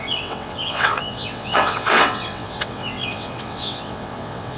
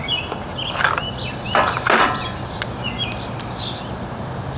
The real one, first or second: second